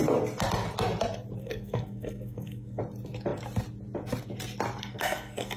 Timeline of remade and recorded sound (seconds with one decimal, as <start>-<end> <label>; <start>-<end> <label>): 0.0-1.4 recorded; 1.4-2.8 remade; 2.8-4.8 recorded; 4.8-5.6 remade